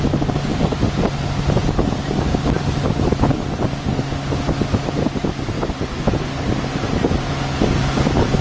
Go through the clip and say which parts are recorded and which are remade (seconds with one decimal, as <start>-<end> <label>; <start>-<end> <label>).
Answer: 0.0-8.4 recorded